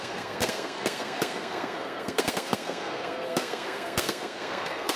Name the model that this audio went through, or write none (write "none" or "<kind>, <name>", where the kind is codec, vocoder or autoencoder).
codec, SNAC